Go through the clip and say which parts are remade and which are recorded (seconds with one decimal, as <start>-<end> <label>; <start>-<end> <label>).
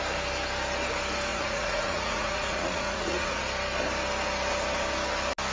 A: 0.0-1.3 recorded; 1.3-3.4 remade; 3.4-5.5 recorded